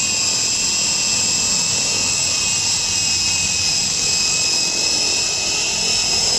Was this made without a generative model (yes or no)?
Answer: yes